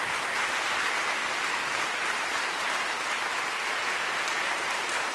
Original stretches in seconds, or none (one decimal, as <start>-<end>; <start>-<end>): 0.0-1.2; 3.4-5.1